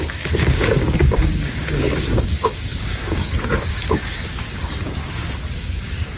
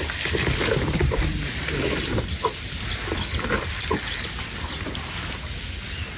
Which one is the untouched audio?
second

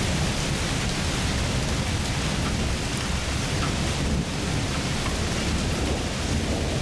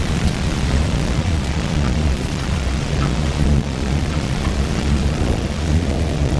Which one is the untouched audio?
first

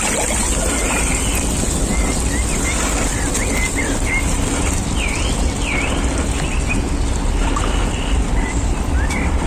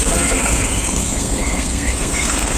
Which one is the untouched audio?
first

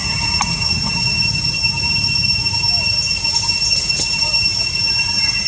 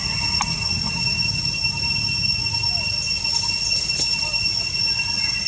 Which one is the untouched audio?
second